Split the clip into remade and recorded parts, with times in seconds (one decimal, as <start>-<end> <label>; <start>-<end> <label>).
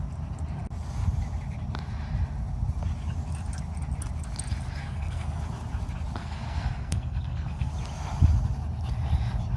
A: 0.0-4.8 recorded; 4.8-5.4 remade; 5.4-6.2 recorded; 6.2-7.7 remade; 7.7-9.6 recorded